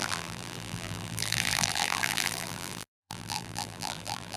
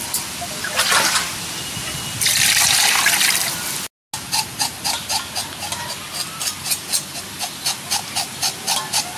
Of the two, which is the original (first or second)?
second